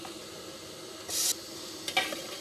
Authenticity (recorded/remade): recorded